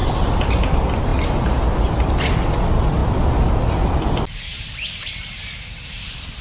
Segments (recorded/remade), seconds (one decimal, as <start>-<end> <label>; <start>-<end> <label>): 0.0-6.4 recorded